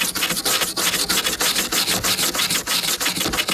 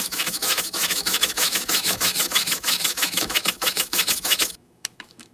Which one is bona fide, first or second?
first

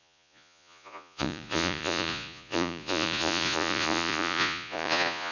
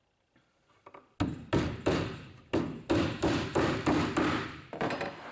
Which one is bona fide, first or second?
second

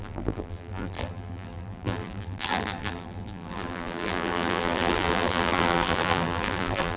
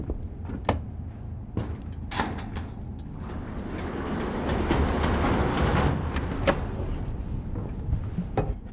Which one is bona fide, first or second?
second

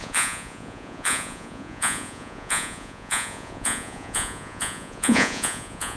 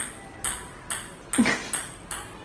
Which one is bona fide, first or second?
second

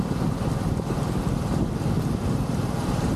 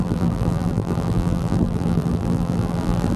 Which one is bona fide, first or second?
first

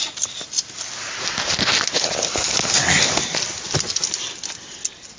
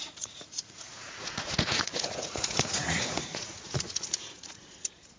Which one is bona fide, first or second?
first